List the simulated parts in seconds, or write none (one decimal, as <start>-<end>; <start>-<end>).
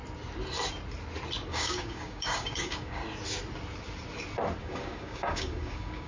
1.5-3.0; 4.6-6.1